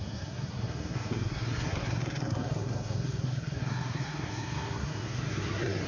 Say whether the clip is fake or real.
fake